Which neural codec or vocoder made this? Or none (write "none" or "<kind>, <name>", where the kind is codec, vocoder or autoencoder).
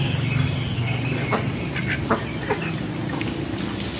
none